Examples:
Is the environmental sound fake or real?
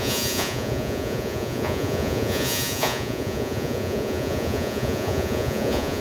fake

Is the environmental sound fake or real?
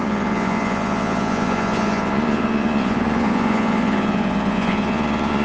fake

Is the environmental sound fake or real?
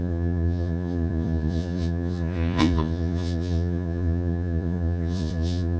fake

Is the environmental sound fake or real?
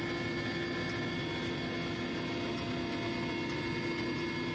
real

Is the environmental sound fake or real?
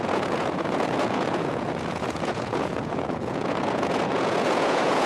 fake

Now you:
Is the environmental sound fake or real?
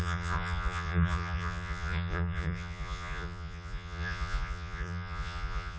fake